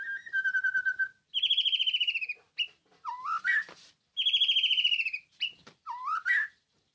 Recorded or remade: recorded